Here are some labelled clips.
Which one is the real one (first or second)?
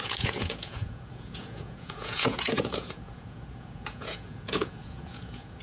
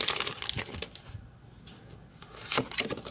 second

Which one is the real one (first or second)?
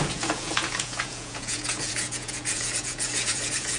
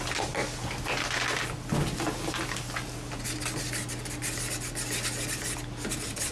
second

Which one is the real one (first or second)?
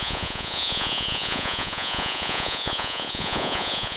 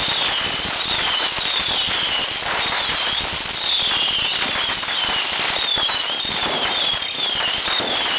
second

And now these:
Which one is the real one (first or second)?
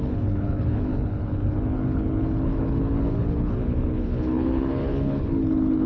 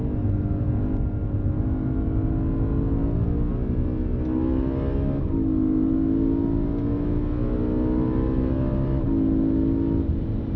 second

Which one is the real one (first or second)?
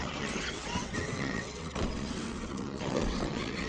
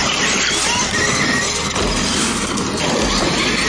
second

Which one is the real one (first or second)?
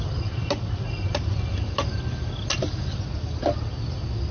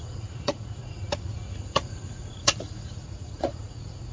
first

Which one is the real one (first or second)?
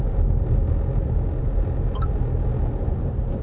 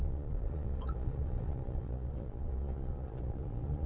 first